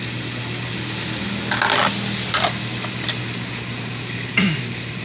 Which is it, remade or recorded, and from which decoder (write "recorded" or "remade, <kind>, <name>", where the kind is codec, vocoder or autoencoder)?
recorded